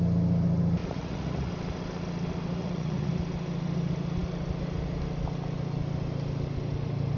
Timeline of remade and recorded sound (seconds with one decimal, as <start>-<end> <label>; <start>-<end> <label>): 0.0-0.8 recorded; 0.8-1.5 remade; 1.5-2.6 recorded; 2.6-3.1 remade; 3.1-7.2 recorded